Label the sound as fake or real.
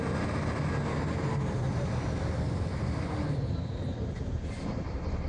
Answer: real